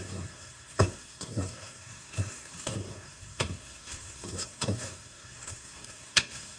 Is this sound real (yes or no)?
no